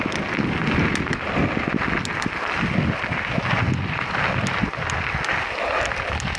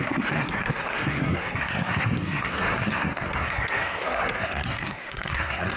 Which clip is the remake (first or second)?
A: second